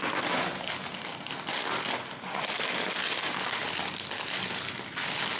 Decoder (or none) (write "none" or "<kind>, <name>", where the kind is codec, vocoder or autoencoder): none